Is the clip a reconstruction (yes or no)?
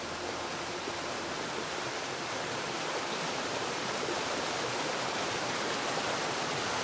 yes